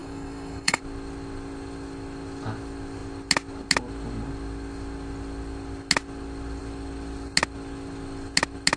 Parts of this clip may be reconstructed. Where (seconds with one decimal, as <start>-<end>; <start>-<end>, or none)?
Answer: 0.0-0.8